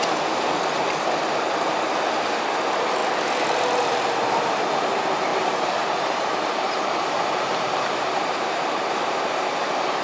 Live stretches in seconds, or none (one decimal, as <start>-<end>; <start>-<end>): 0.0-5.3; 9.3-10.0